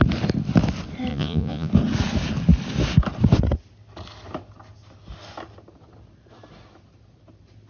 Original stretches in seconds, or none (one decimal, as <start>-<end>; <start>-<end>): 0.0-1.1; 1.7-7.7